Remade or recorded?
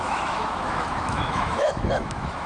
remade